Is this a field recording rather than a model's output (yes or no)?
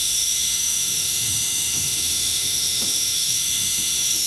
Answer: no